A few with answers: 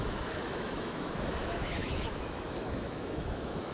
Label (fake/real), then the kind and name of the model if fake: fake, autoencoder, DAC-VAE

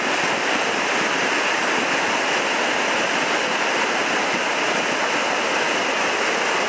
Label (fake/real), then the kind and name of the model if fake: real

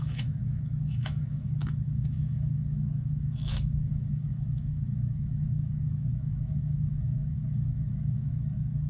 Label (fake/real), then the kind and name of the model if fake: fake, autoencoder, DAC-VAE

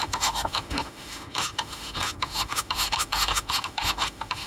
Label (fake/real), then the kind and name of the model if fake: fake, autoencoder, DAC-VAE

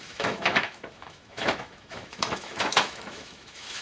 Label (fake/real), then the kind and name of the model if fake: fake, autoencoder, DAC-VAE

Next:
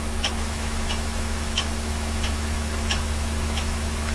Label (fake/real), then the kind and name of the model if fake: fake, autoencoder, DAC-VAE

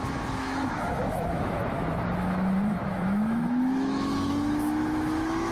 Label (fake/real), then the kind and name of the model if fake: fake, autoencoder, DAC-VAE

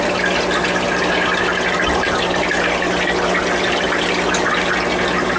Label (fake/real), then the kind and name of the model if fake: real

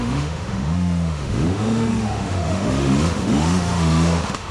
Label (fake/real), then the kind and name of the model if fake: fake, autoencoder, DAC-VAE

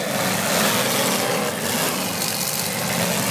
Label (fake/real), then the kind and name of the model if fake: real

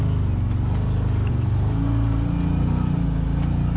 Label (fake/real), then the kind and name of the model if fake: real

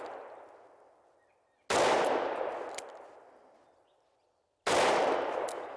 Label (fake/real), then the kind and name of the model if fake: real